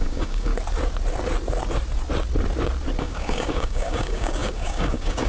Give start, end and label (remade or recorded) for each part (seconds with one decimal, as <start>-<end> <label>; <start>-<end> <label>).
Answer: 0.0-0.5 remade; 0.5-3.0 recorded; 3.0-5.3 remade

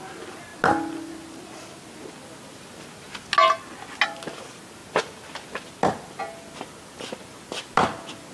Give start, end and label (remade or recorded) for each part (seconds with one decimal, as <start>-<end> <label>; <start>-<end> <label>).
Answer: 0.0-8.3 recorded